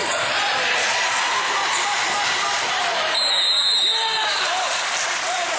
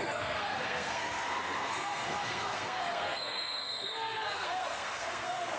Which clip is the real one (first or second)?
first